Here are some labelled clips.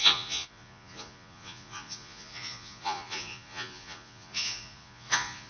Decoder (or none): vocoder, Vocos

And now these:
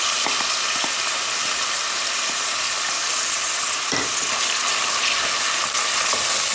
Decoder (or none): none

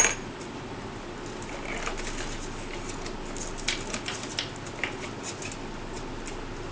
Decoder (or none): none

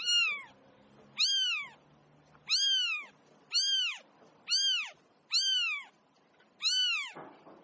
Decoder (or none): none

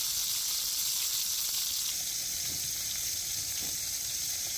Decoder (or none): none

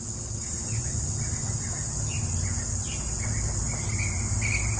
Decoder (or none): none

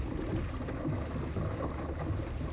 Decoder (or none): none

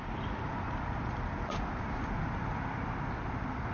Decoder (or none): vocoder, BigVGAN v2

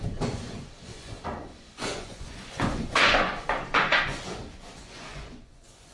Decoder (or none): vocoder, Vocos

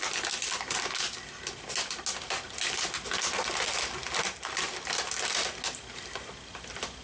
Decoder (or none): none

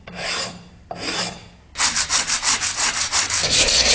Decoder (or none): none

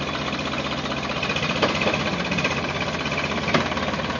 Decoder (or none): none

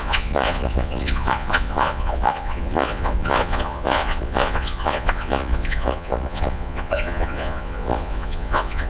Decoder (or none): vocoder, Vocos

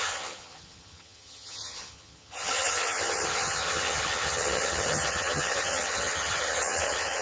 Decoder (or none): vocoder, HiFi-GAN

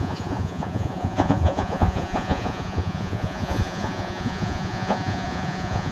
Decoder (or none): vocoder, Vocos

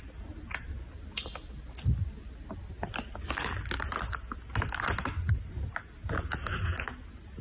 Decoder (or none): none